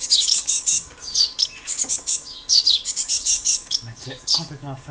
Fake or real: fake